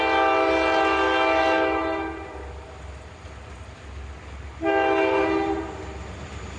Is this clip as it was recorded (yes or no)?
yes